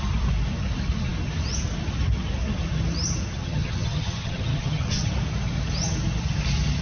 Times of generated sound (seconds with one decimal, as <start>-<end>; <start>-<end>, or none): 3.4-5.1